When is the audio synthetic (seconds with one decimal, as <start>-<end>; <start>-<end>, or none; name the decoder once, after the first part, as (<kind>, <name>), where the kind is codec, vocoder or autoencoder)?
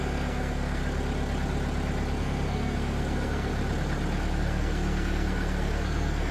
0.0-0.8 (codec, SNAC); 2.2-3.5; 4.3-6.3